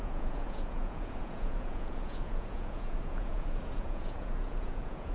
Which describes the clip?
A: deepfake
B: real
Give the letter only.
A